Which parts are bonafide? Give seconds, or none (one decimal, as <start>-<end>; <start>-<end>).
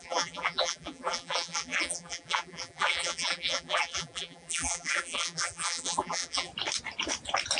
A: 6.5-7.6